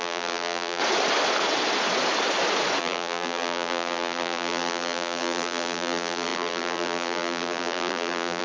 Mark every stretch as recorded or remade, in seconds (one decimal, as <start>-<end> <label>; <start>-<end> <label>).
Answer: 0.0-0.8 remade; 0.8-2.8 recorded; 2.8-8.4 remade